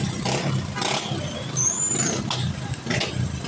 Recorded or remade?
recorded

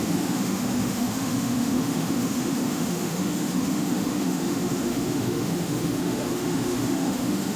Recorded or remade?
remade